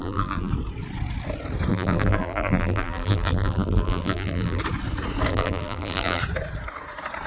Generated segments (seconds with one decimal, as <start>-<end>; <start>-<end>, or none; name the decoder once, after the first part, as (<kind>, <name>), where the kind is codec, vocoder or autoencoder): 0.0-0.5 (vocoder, BigVGAN v2); 1.7-4.6; 5.3-6.2